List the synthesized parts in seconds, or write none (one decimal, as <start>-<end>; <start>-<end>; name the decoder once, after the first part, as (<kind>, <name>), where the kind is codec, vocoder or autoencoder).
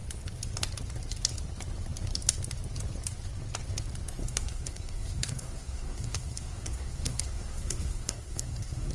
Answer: 4.2-8.9 (codec, SNAC)